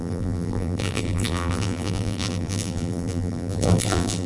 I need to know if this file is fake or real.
fake